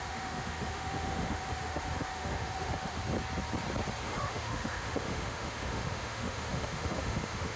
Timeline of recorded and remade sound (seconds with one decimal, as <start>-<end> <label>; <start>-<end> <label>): 0.0-3.0 remade; 3.0-4.0 recorded; 4.0-7.6 remade